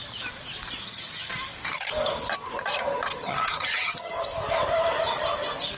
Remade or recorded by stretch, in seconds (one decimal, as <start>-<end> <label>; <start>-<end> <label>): 0.0-0.8 recorded; 0.8-1.3 remade; 1.3-3.2 recorded; 3.2-4.1 remade; 4.1-5.8 recorded

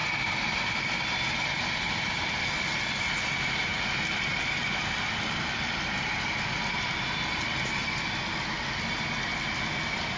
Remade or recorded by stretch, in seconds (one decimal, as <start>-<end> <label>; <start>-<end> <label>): 0.0-10.2 recorded

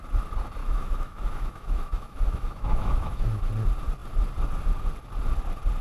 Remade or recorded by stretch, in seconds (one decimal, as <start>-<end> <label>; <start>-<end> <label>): 0.0-0.6 recorded; 0.6-3.5 remade; 3.5-5.8 recorded

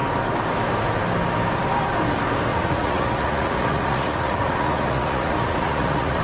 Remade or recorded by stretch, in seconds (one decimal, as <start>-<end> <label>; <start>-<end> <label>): 0.0-2.5 recorded; 2.5-6.2 remade

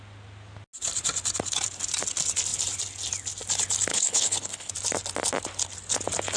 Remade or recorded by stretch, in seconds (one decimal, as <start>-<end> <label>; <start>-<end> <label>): 0.0-3.9 recorded; 3.9-4.7 remade; 4.7-6.4 recorded

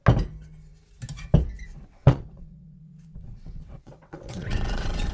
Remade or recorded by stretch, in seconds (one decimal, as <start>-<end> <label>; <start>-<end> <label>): 0.0-1.9 recorded; 1.9-5.1 remade

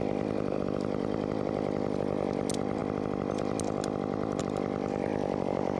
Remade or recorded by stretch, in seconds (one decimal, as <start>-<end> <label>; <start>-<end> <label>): 0.0-5.8 recorded

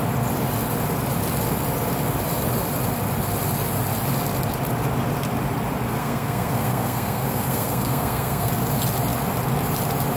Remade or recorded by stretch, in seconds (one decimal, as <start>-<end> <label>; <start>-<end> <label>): 0.0-6.0 recorded; 6.0-8.5 remade; 8.5-10.2 recorded